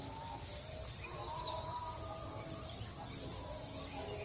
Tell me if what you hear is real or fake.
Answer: real